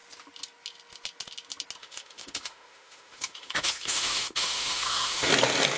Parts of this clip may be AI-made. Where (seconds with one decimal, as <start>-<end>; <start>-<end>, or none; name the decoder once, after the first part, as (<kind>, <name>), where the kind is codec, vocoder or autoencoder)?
1.8-5.3 (autoencoder, DAC-VAE)